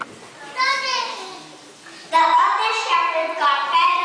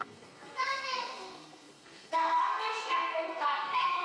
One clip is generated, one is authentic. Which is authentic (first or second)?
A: first